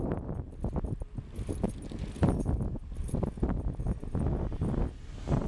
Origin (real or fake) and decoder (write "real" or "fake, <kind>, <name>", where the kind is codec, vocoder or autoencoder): real